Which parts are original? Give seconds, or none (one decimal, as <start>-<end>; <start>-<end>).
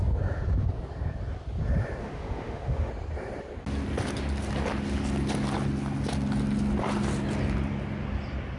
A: 0.0-2.0; 2.9-8.6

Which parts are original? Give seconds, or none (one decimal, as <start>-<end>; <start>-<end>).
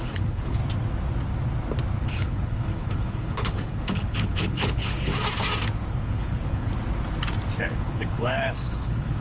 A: 0.6-2.0; 5.1-5.9; 6.7-7.6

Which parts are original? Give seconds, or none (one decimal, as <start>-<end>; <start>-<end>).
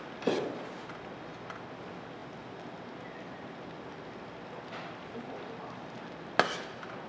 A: 0.0-7.1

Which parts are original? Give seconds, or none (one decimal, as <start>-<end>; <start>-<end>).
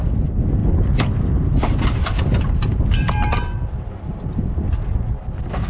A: 0.0-0.6; 2.2-2.7; 4.1-5.7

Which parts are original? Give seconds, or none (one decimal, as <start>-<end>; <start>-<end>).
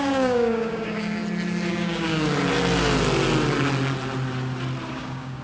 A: 1.2-1.7; 2.1-4.9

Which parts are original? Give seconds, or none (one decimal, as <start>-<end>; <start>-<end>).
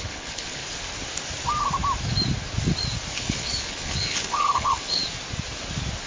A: 0.6-3.1; 5.0-6.1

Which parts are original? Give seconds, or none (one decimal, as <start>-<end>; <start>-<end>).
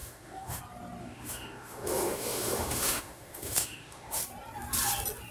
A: 0.6-1.0; 4.2-5.3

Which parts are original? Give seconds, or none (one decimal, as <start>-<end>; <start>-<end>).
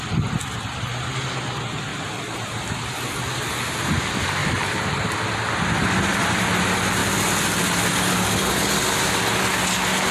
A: 0.0-10.1